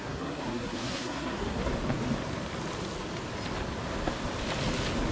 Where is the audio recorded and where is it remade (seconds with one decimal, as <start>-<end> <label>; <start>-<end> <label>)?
0.0-1.7 remade; 1.7-5.1 recorded

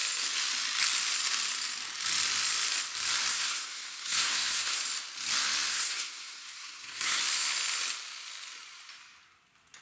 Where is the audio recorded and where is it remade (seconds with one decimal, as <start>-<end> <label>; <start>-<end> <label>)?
0.0-3.3 recorded; 3.3-4.8 remade; 4.8-5.7 recorded; 5.7-7.2 remade; 7.2-9.8 recorded